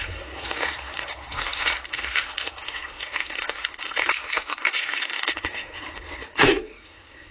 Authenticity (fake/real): fake